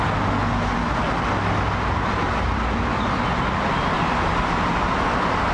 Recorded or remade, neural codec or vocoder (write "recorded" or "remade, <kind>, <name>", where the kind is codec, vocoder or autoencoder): recorded